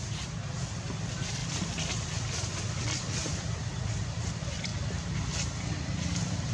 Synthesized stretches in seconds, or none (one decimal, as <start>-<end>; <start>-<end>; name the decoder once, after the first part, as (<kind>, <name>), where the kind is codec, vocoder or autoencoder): 0.0-1.4 (vocoder, BigVGAN v2); 2.7-4.7